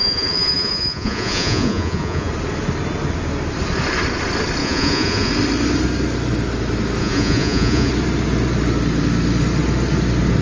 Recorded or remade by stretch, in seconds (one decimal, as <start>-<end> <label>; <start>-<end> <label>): 0.0-2.3 remade; 2.3-4.6 recorded; 4.6-5.3 remade; 5.3-7.0 recorded; 7.0-7.9 remade; 7.9-10.4 recorded